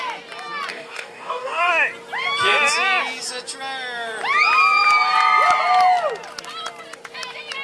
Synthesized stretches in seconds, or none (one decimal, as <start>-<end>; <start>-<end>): 0.7-1.7